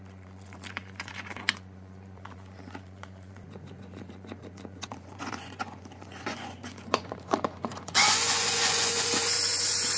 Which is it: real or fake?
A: fake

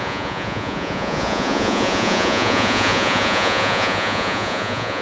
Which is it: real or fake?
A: fake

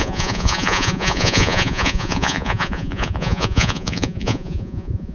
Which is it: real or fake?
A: fake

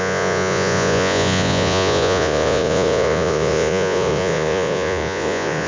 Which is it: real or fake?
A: fake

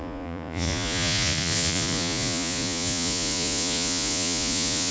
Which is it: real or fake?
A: fake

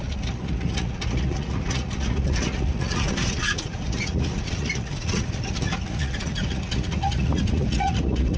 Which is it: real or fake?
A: fake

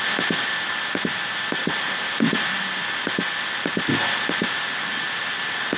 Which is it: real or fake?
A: real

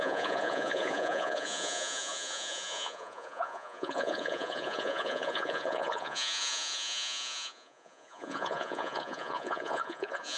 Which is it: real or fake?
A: fake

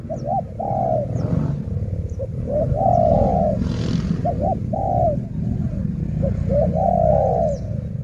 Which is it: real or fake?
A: real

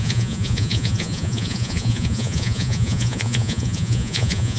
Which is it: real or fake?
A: fake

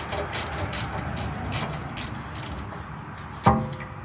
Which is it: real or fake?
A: real